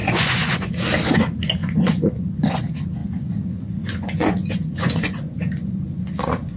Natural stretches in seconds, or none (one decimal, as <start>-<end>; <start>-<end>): 0.7-1.6; 2.6-3.0